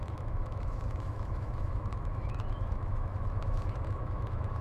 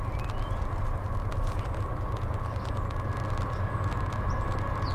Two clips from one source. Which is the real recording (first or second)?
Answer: second